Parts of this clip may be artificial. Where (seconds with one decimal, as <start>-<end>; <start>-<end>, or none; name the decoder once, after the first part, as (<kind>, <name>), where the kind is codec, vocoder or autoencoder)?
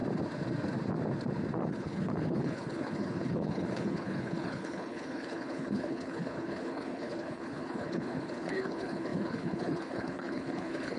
1.7-11.0 (codec, HILCodec)